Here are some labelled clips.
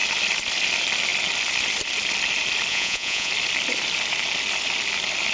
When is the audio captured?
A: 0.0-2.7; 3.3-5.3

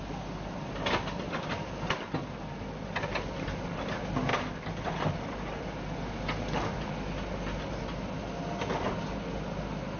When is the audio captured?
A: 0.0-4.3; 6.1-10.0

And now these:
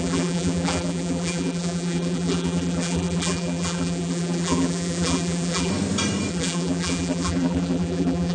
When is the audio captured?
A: 5.7-6.3

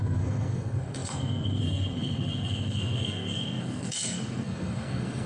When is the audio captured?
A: none

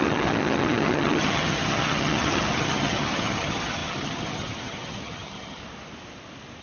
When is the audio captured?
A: 5.6-6.6

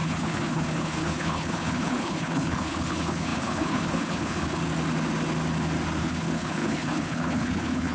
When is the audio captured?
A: 4.6-6.0